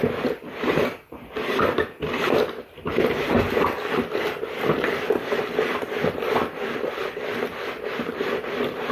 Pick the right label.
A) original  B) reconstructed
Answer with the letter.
A